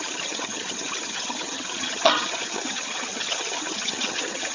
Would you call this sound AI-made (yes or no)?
yes